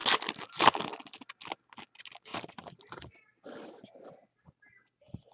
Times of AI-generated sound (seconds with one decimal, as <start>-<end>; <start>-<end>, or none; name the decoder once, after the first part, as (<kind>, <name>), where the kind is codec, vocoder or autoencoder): 2.3-3.0 (vocoder, BigVGAN v2)